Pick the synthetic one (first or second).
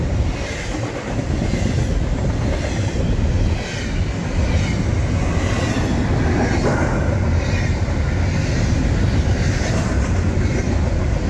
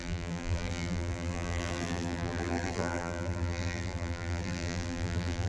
second